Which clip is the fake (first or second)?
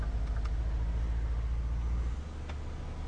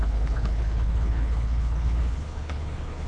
second